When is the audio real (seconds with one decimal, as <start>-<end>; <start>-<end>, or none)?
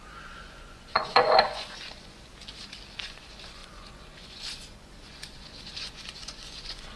2.3-3.0